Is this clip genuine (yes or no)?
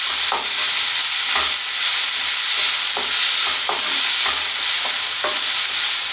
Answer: yes